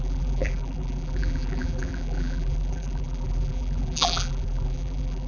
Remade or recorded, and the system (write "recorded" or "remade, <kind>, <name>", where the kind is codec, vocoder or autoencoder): remade, vocoder, BigVGAN v2